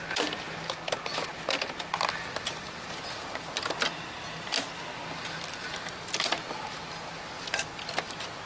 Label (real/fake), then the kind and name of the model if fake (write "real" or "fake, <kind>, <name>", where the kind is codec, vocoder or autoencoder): real